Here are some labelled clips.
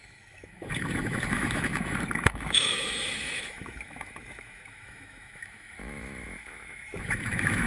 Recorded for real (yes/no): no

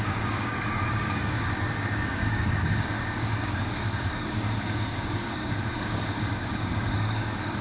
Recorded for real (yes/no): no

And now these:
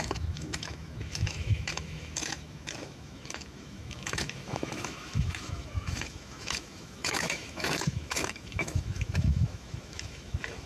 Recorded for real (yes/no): no